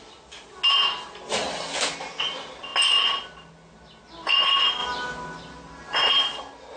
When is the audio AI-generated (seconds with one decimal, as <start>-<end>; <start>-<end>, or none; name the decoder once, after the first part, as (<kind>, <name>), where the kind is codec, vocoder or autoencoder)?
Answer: none